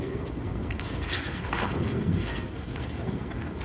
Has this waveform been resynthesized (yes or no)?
yes